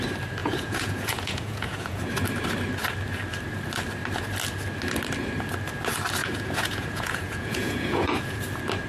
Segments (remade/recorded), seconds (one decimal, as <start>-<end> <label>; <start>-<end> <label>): 0.0-0.4 recorded; 0.4-2.0 remade; 2.0-6.2 recorded; 6.2-8.4 remade; 8.4-8.9 recorded